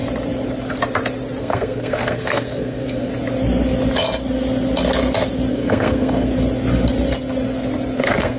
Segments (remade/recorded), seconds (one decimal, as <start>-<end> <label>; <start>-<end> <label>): 0.0-1.4 recorded; 1.4-3.1 remade; 3.1-5.5 recorded; 5.5-6.3 remade; 6.3-8.0 recorded; 8.0-8.4 remade